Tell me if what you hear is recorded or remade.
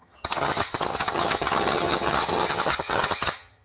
remade